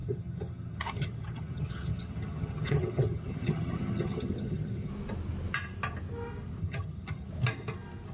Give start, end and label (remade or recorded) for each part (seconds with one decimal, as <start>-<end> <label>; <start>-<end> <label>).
0.0-4.9 remade; 4.9-6.6 recorded; 6.6-7.3 remade; 7.3-8.1 recorded